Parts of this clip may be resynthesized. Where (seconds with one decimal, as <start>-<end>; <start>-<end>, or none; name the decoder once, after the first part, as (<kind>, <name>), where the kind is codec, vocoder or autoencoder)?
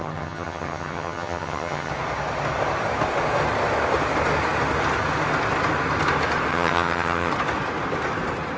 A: 0.0-1.9 (vocoder, HiFi-GAN); 6.5-7.3